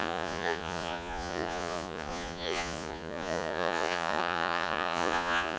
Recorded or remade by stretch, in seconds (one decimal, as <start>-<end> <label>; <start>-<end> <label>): 0.0-5.6 remade

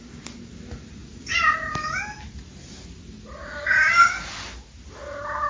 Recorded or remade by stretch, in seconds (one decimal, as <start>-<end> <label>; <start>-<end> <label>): 0.0-5.5 recorded